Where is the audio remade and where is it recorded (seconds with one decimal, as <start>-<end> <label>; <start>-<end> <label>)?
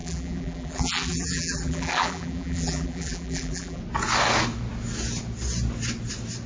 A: 0.0-3.8 remade; 3.8-6.5 recorded